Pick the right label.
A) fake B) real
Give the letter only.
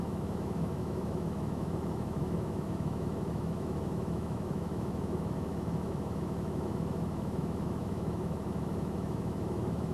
A